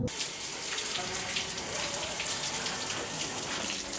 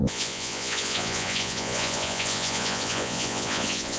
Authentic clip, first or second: first